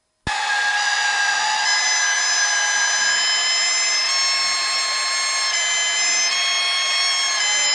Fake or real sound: real